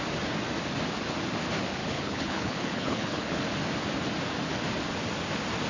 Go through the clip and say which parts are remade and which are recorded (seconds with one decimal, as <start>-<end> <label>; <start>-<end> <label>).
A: 0.0-1.8 recorded; 1.8-3.4 remade; 3.4-5.7 recorded